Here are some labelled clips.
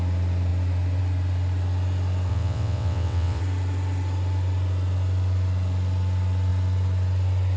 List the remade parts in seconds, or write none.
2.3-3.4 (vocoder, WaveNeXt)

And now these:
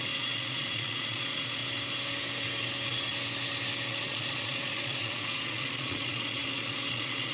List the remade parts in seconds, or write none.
0.0-1.6 (vocoder, Vocos); 3.9-7.3